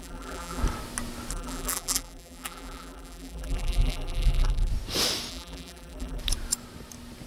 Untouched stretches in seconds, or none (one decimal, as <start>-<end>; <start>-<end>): 0.6-1.3; 4.7-5.3; 6.2-7.3